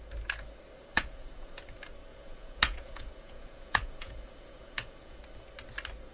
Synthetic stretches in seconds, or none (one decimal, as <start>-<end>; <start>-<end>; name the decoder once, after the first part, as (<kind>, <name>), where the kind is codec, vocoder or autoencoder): 0.9-1.6 (vocoder, Vocos); 2.1-5.2